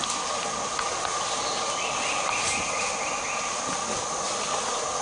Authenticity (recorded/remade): recorded